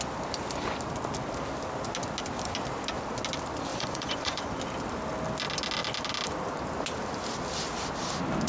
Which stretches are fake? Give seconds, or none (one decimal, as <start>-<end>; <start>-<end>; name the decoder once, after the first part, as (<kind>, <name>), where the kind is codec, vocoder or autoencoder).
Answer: 3.7-4.6 (vocoder, Vocos)